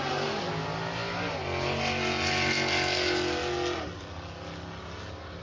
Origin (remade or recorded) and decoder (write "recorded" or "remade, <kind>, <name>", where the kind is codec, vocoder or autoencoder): recorded